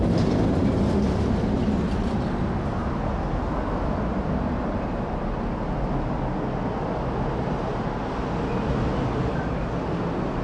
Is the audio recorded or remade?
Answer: recorded